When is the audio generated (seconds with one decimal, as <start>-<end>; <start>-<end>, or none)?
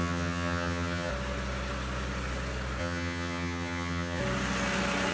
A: 0.0-1.1; 2.8-4.2